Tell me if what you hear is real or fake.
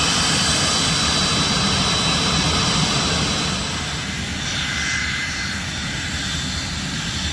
real